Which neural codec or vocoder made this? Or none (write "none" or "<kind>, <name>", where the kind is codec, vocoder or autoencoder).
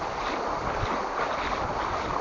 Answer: none